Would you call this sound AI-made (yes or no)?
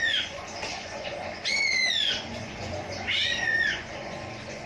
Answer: yes